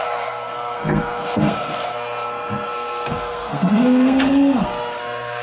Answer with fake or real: fake